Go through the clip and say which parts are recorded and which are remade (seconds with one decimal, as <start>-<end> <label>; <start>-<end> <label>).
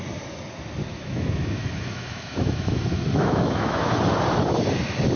0.0-0.8 recorded; 0.8-3.9 remade; 3.9-5.2 recorded